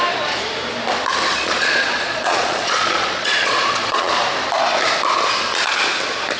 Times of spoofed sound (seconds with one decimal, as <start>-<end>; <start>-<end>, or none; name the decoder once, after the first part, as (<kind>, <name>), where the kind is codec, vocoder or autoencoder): 1.3-4.1 (vocoder, Vocos)